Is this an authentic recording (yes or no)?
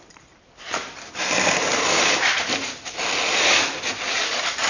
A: no